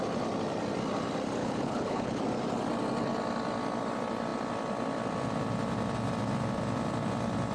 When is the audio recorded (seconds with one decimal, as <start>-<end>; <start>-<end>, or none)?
0.0-1.4; 2.2-7.5